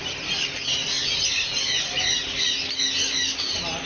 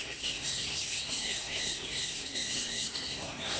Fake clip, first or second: second